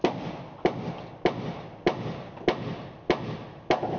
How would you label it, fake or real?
real